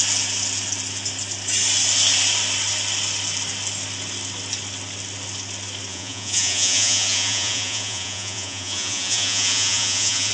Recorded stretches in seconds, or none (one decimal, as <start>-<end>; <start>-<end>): 0.0-5.9